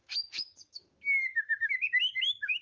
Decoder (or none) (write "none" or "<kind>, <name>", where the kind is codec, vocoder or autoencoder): autoencoder, DAC-VAE